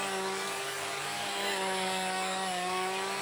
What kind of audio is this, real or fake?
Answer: fake